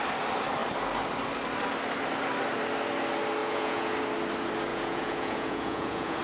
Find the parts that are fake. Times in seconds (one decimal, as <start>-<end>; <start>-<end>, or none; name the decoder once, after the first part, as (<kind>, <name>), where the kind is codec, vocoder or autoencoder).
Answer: 3.4-3.9 (vocoder, Vocos); 4.7-6.2